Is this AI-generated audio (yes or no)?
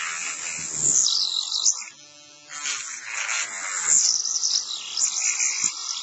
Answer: no